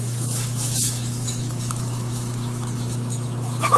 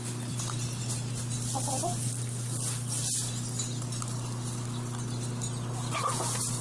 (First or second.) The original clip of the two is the second